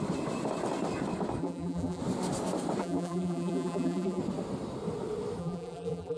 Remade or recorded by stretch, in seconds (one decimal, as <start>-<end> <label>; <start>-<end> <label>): 0.0-1.4 recorded; 1.4-2.0 remade; 2.0-2.8 recorded; 2.8-4.2 remade; 4.2-5.4 recorded; 5.4-6.2 remade